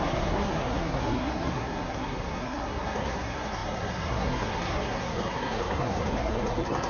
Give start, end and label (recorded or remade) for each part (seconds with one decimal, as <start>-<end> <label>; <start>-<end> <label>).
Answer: 0.0-6.9 remade